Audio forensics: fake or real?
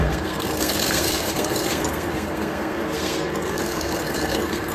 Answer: fake